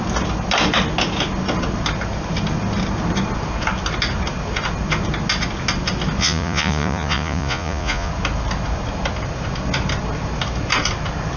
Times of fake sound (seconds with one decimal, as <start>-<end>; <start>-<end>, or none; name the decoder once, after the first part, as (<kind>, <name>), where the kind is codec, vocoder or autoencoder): 6.2-8.1 (vocoder, Vocos)